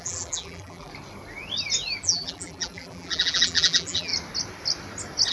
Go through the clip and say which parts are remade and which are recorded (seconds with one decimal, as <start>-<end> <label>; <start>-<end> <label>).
0.0-0.9 remade; 0.9-2.0 recorded; 2.0-4.1 remade; 4.1-5.3 recorded